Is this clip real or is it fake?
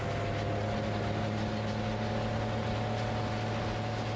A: real